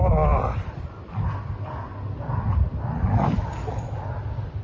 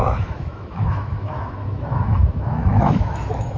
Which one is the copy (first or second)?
second